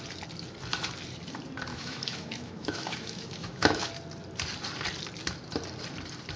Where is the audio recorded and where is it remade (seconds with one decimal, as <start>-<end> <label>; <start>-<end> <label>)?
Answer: 0.0-1.7 recorded; 1.7-3.9 remade; 3.9-6.4 recorded